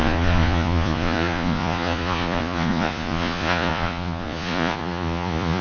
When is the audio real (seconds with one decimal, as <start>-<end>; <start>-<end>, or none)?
none